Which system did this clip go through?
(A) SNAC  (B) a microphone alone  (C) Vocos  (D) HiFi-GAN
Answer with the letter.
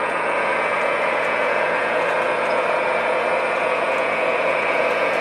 C